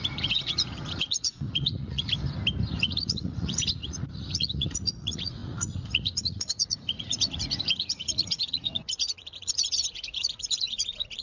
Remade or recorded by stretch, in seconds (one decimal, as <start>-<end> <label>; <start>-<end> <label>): 0.0-2.1 remade; 2.1-2.8 recorded; 2.8-11.2 remade